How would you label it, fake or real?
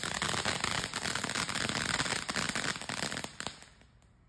real